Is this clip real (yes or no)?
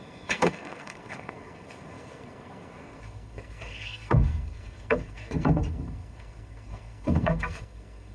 no